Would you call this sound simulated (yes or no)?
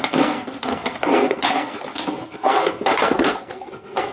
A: yes